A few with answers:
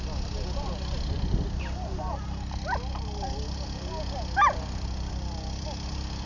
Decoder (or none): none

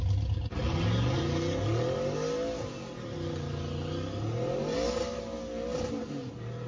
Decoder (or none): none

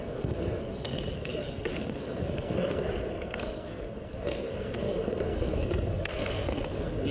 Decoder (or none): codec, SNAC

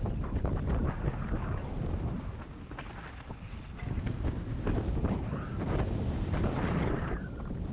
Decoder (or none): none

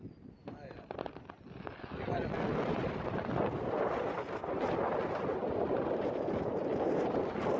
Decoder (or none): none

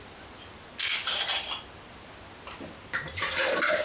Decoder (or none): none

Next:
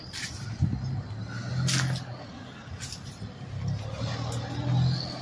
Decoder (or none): none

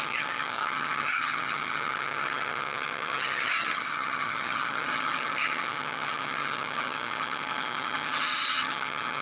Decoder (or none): vocoder, HiFi-GAN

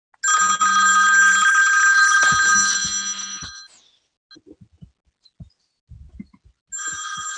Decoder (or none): none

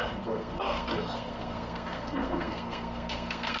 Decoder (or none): codec, SNAC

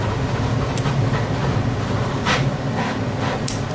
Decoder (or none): none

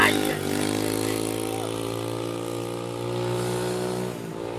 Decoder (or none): vocoder, BigVGAN v2